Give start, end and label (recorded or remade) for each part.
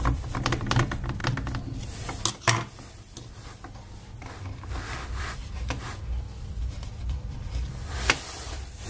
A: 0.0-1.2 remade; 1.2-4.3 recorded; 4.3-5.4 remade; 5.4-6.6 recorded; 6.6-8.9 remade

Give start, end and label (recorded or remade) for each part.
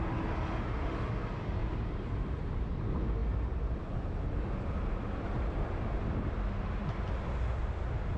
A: 0.0-1.6 recorded; 1.6-2.5 remade; 2.5-3.2 recorded; 3.2-8.2 remade